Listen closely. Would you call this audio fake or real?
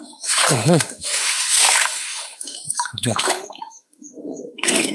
fake